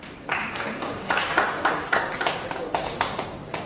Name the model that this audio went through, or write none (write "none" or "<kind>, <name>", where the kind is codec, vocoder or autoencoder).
codec, DAC